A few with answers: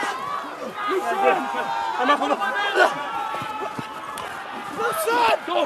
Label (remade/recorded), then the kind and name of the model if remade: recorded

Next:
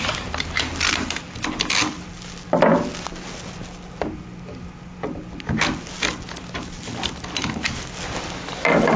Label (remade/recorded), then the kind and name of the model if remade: recorded